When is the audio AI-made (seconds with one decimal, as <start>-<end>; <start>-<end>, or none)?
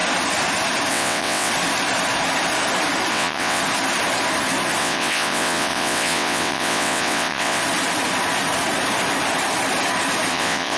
0.9-1.5; 3.1-3.6; 4.8-7.6; 10.3-10.8